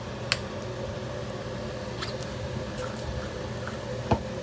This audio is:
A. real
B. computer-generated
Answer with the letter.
A